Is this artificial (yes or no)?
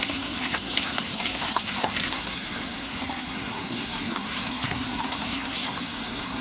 yes